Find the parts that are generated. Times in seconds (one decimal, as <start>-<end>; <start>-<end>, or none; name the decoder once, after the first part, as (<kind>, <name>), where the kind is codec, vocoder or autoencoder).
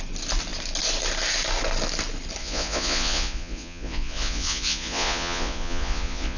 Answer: 2.4-6.4 (vocoder, Vocos)